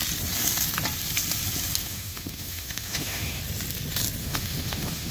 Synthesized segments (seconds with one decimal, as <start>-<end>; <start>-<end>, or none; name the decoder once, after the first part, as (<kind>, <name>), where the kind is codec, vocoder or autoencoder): 1.8-3.4 (autoencoder, DAC-VAE); 4.2-5.1